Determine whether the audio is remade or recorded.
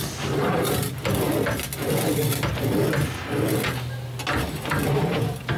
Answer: recorded